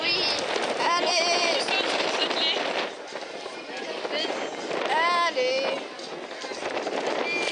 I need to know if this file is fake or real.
real